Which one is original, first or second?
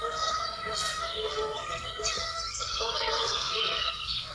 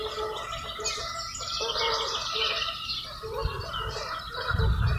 second